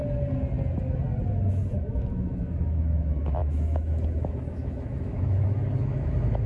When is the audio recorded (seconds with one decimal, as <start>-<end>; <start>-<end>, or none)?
0.0-1.9